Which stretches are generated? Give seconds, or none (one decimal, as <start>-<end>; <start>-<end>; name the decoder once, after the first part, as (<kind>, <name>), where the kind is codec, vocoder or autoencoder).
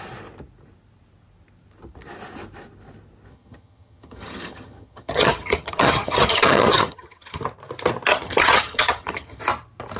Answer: 3.3-7.4 (vocoder, HiFi-GAN); 8.1-9.4